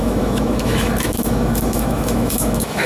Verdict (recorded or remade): remade